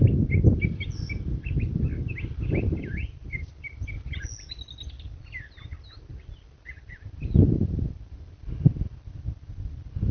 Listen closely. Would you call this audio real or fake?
real